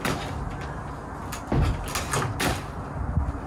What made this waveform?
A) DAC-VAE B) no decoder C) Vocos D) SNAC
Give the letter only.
B